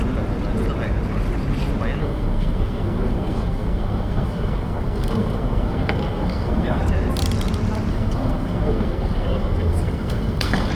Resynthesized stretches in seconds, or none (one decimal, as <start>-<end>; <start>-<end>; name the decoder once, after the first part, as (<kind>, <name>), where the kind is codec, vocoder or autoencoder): 2.0-6.8 (codec, SNAC); 7.9-10.7